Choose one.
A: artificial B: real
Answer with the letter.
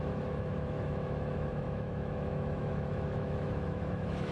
A